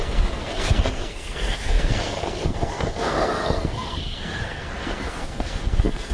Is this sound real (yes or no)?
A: no